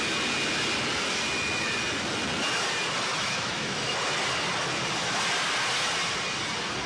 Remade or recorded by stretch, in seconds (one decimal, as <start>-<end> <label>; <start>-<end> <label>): 0.0-3.1 recorded; 3.1-3.9 remade; 3.9-6.9 recorded